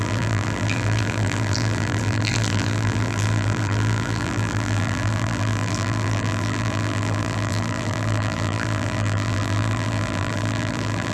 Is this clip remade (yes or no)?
yes